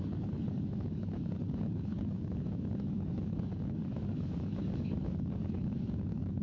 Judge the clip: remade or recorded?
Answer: remade